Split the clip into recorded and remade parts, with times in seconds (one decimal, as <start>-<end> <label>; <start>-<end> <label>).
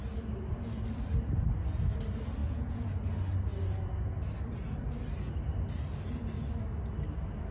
0.0-2.4 recorded; 2.4-2.9 remade; 2.9-7.5 recorded